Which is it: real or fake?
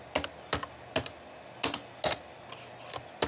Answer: real